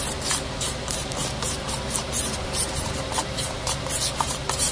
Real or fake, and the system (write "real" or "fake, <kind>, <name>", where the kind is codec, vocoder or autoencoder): fake, vocoder, BigVGAN v2